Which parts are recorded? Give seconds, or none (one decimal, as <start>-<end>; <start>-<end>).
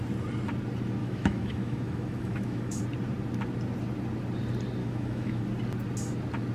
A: 0.0-1.0; 2.8-4.8; 5.4-6.5